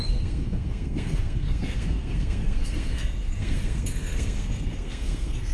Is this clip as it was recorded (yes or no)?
no